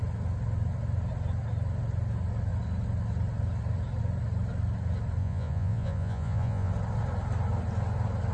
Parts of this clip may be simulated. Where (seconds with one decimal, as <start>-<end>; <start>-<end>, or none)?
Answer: 5.2-6.7